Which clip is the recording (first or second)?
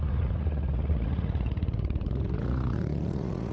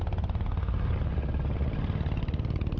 second